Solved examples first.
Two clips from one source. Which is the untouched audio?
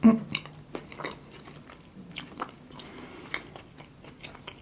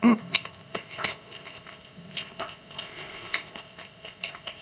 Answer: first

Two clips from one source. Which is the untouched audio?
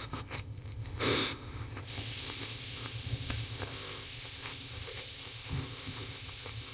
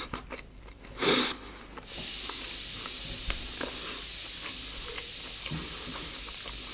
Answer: second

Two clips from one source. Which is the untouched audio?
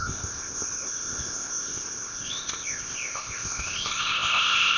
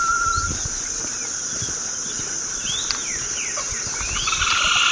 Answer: second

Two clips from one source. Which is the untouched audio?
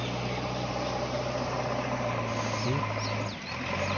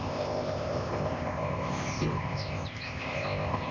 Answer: first